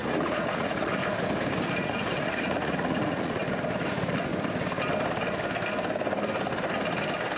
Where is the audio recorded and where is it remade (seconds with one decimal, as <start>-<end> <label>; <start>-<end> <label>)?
0.0-1.0 remade; 1.0-1.7 recorded; 1.7-3.4 remade; 3.4-3.9 recorded; 3.9-4.3 remade; 4.3-7.4 recorded